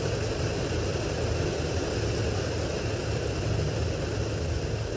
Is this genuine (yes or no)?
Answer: yes